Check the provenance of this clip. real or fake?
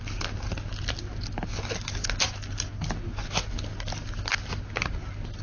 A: real